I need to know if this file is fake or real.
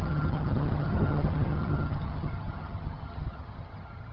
fake